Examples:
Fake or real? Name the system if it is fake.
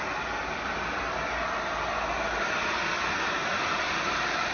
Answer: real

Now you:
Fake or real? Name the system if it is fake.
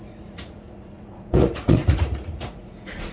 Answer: fake, vocoder, Vocos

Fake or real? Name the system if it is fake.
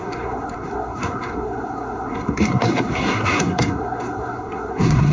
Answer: fake, codec, SNAC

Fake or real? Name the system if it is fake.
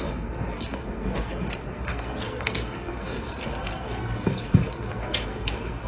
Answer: fake, codec, SNAC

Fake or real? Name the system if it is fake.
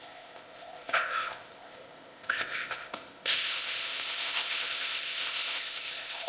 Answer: fake, codec, ZipCodec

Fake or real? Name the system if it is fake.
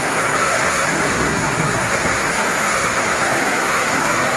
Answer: fake, codec, SNAC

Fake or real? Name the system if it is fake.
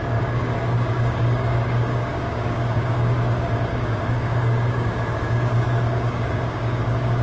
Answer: fake, codec, DAC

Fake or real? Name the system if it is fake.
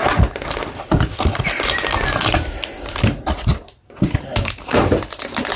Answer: real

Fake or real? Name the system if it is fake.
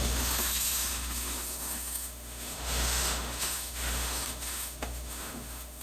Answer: fake, autoencoder, DAC-VAE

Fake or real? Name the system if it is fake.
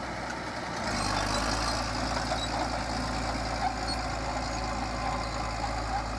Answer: real